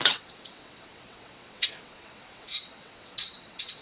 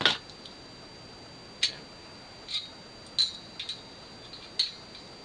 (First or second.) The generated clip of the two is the first